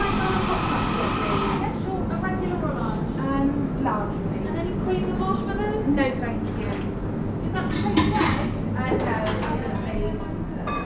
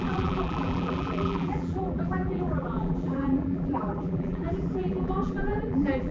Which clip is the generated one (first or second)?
second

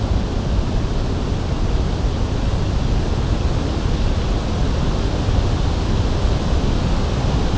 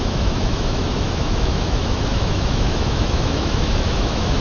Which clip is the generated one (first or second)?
second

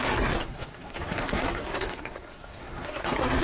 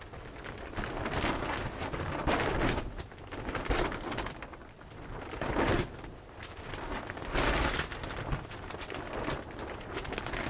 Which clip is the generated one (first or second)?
first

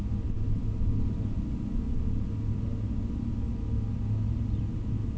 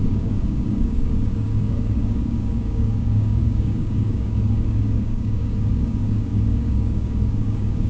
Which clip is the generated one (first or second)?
second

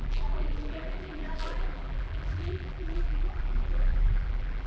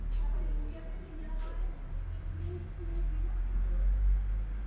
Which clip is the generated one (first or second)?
first